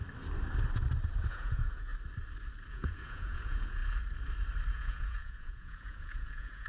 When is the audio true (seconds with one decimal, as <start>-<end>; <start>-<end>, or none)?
0.0-1.3; 1.9-2.7; 3.8-4.7